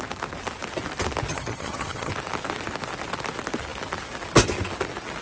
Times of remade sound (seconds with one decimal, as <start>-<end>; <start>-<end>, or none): 1.3-2.1